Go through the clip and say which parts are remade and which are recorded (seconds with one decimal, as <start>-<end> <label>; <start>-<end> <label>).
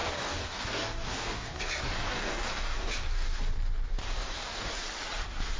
0.0-3.4 remade; 3.4-4.0 recorded; 4.0-4.7 remade; 4.7-5.6 recorded